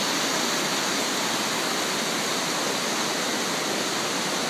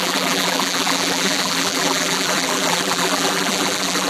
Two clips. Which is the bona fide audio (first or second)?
first